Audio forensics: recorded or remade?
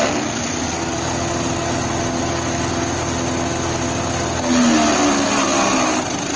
recorded